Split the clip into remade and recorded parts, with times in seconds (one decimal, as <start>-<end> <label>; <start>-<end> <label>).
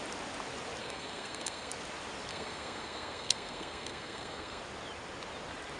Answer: 0.0-0.8 recorded; 0.8-1.7 remade; 1.7-2.3 recorded; 2.3-4.6 remade; 4.6-5.8 recorded